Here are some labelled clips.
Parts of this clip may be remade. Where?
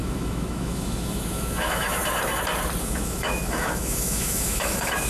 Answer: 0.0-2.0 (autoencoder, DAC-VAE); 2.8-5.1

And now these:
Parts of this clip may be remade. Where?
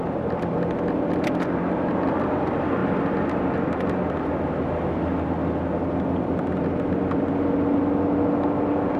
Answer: none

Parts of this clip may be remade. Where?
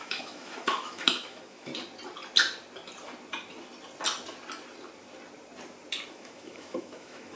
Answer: 0.0-1.7 (autoencoder, DAC-VAE); 6.1-7.4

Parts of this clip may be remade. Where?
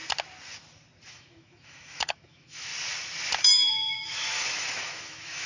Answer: 1.1-2.7 (autoencoder, DAC-VAE); 3.4-5.5